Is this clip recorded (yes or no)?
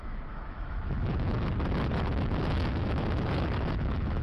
no